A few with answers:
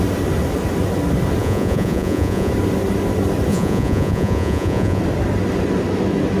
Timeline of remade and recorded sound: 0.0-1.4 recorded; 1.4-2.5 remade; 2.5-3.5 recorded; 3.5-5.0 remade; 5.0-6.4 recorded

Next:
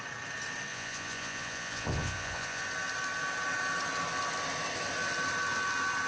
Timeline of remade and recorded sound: 0.0-0.7 recorded; 0.7-2.6 remade; 2.6-6.1 recorded

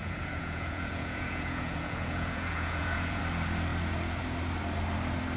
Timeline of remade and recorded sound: 0.0-3.2 remade; 3.2-5.4 recorded